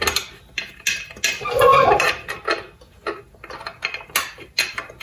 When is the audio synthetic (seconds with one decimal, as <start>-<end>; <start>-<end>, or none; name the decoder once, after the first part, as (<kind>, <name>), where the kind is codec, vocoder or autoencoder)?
none